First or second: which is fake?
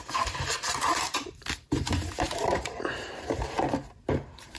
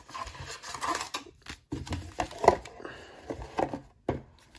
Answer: first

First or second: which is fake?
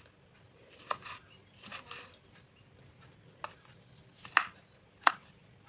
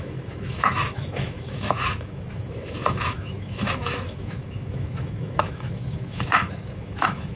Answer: second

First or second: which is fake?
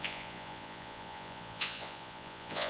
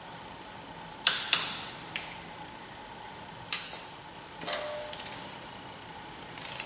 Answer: first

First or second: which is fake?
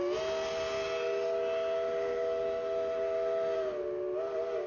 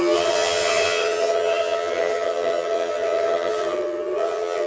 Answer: second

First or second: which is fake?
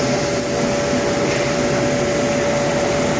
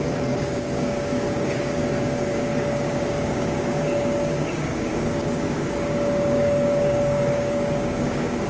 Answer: second